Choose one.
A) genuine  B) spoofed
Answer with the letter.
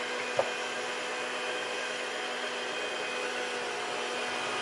A